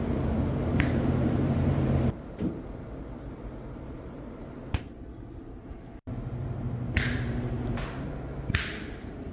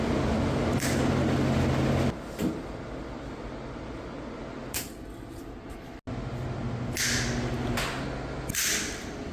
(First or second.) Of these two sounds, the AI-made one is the first